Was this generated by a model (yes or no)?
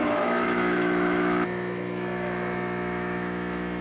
yes